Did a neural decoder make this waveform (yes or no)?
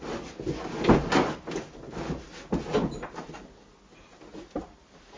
no